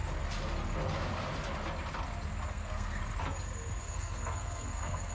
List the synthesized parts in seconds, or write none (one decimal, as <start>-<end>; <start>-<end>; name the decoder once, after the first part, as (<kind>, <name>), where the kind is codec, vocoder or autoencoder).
2.5-3.0 (codec, SNAC); 3.8-5.1